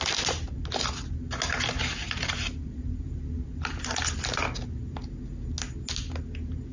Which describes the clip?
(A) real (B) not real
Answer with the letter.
A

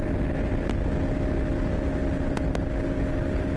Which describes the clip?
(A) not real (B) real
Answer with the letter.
B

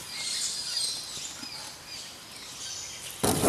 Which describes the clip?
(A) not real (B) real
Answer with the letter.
B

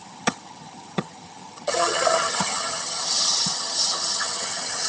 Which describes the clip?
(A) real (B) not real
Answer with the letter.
B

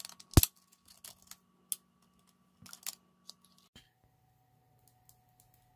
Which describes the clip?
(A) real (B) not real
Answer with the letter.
A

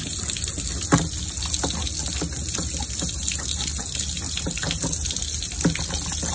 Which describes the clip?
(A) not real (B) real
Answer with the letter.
B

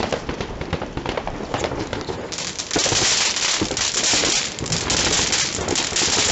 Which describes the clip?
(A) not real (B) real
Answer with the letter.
B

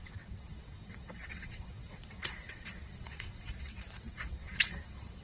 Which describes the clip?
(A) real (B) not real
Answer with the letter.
B